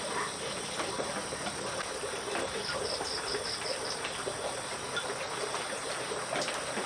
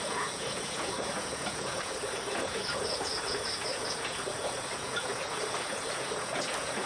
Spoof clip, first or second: second